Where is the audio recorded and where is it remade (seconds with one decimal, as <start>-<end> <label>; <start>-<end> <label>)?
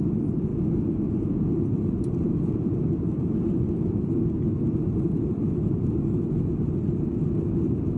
0.0-8.0 recorded